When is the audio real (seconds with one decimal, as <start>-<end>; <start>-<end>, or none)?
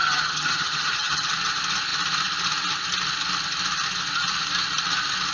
1.3-5.3